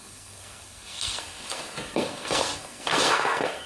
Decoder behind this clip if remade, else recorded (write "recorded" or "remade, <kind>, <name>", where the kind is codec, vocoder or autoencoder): remade, codec, SNAC